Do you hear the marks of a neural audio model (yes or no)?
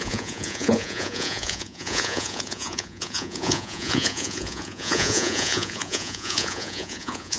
yes